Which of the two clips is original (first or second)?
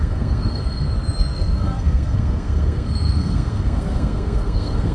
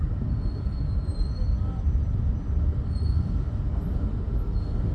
second